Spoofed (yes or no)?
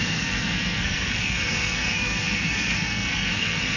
yes